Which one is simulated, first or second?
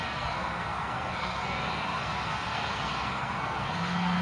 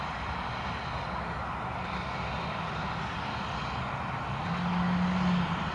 first